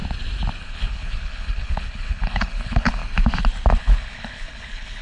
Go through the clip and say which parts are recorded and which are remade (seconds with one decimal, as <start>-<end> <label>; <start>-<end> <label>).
0.0-0.6 recorded; 0.6-3.0 remade; 3.0-3.8 recorded; 3.8-5.0 remade